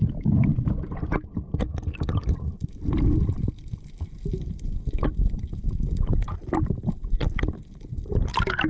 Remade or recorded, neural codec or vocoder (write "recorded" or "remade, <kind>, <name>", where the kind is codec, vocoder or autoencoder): recorded